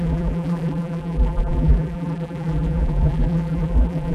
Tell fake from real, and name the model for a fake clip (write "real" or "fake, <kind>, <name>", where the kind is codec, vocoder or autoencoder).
fake, vocoder, BigVGAN v2